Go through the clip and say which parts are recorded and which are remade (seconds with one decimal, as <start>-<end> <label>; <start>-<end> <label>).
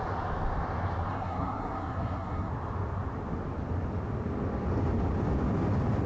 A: 0.0-1.1 recorded; 1.1-2.5 remade; 2.5-6.1 recorded